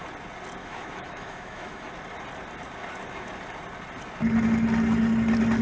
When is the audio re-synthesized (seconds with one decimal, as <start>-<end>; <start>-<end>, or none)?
0.6-1.9